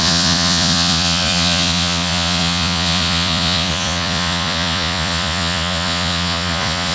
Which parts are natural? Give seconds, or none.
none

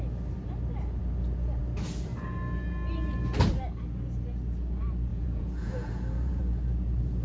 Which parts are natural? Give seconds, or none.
0.0-5.1; 6.4-7.2

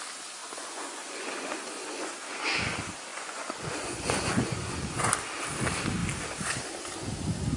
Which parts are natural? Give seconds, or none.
0.0-0.4; 2.4-3.1; 5.1-7.6